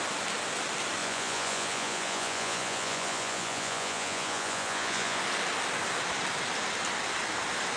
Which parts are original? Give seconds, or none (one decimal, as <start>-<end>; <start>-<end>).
0.0-1.0; 5.2-7.8